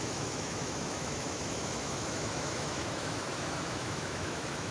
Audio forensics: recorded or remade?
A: remade